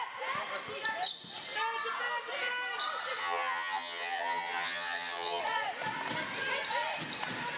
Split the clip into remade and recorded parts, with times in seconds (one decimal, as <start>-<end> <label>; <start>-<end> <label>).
0.0-3.2 recorded; 3.2-5.4 remade; 5.4-7.6 recorded